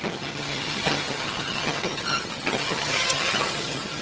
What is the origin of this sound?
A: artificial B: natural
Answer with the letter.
A